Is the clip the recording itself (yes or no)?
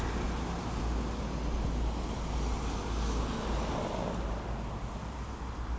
yes